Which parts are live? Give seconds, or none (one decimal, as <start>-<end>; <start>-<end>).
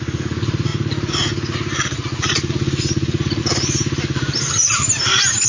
0.7-3.4